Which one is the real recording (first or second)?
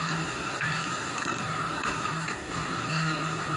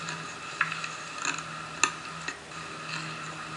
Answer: second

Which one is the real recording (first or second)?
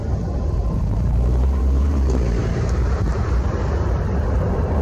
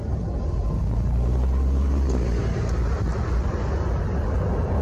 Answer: second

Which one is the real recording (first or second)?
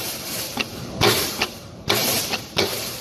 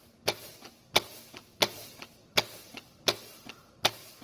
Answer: second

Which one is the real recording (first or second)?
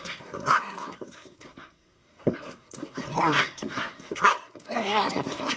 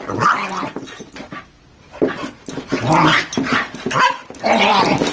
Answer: second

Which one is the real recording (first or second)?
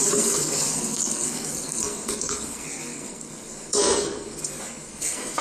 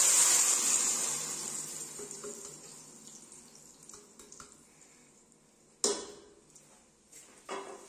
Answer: second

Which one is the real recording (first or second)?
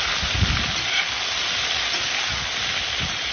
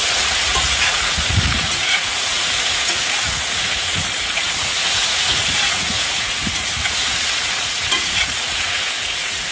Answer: first